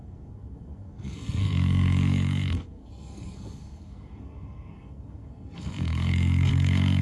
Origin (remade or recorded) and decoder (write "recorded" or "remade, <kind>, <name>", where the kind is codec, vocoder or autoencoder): remade, codec, SNAC